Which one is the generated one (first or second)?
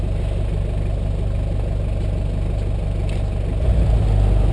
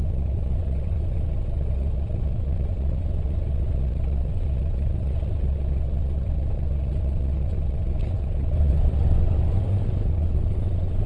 second